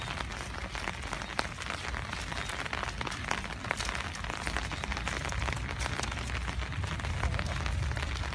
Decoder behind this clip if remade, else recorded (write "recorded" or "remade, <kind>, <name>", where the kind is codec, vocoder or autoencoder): recorded